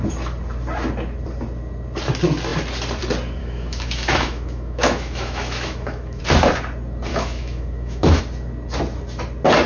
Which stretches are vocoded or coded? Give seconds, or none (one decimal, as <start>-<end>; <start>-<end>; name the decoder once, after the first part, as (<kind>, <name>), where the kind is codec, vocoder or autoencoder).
3.4-6.2 (autoencoder, DAC-VAE); 7.1-8.2